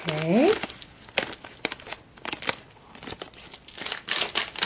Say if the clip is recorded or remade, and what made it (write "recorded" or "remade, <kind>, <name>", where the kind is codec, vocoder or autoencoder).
recorded